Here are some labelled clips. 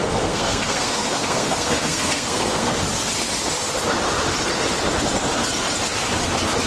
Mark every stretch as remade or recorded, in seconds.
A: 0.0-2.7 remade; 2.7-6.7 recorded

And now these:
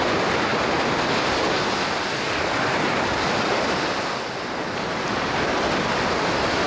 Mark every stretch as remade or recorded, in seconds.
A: 0.0-6.7 recorded

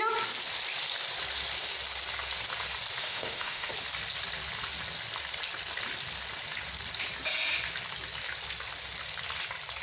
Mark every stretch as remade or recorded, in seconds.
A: 0.0-3.0 recorded; 3.0-3.7 remade; 3.7-9.8 recorded

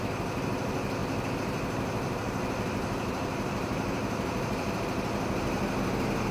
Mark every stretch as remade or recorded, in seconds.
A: 0.0-1.0 recorded; 1.0-4.8 remade; 4.8-6.3 recorded